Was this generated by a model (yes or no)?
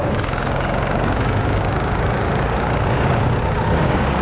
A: yes